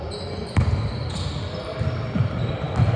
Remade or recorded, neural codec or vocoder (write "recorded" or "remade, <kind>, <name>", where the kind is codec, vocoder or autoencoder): recorded